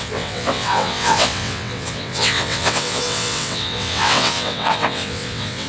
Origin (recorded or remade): remade